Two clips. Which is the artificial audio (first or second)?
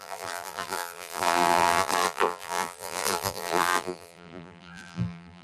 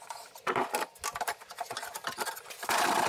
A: first